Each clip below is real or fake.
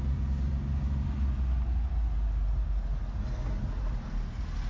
real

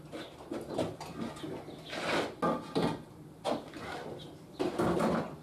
real